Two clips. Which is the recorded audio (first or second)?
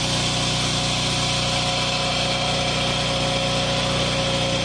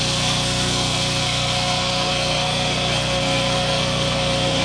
first